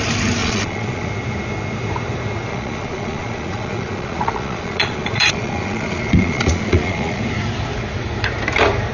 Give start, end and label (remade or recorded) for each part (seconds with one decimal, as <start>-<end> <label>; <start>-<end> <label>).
0.0-0.4 recorded; 0.4-1.1 remade; 1.1-2.5 recorded; 2.5-7.2 remade; 7.2-8.9 recorded